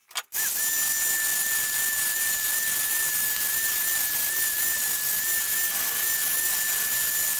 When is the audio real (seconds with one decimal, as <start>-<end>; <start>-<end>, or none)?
0.0-7.4